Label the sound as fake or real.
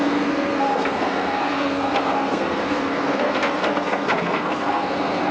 fake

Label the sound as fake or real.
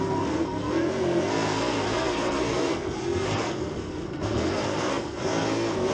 fake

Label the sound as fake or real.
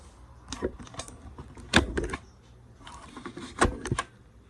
real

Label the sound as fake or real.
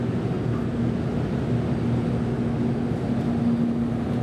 real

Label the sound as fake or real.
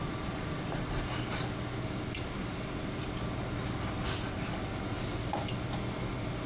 real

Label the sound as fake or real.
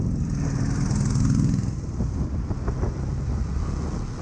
real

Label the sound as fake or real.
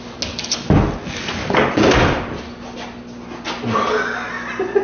real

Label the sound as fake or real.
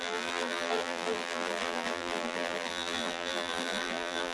fake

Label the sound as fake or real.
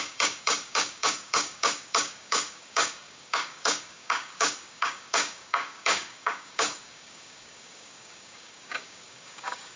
fake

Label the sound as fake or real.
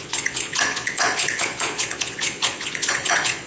fake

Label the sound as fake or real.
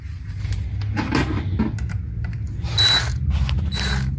real